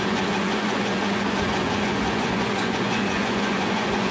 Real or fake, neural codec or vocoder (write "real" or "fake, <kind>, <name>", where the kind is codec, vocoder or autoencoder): fake, vocoder, Vocos